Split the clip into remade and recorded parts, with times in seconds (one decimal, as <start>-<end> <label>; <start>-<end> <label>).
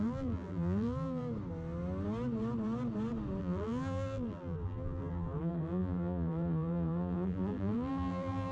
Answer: 0.0-1.2 remade; 1.2-3.4 recorded; 3.4-8.5 remade